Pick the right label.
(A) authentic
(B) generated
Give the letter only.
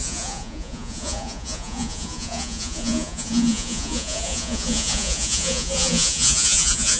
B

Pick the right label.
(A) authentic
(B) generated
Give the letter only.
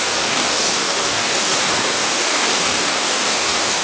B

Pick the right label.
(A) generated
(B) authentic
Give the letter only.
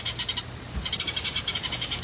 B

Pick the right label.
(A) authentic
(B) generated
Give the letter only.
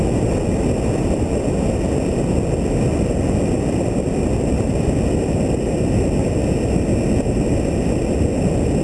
A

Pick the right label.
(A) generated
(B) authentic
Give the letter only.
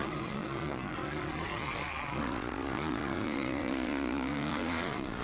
A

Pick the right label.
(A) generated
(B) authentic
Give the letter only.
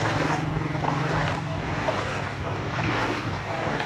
A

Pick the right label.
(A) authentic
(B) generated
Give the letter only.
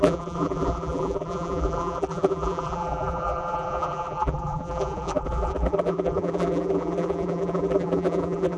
B